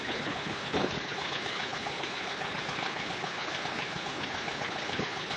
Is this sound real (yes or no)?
no